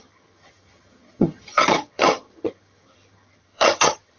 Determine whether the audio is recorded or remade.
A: remade